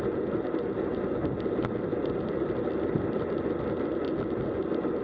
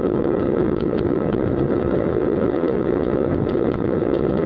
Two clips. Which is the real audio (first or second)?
first